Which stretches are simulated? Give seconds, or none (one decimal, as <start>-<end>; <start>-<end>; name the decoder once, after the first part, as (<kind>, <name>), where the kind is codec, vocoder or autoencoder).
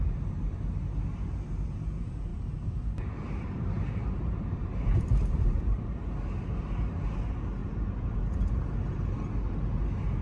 2.3-5.6 (vocoder, BigVGAN v2)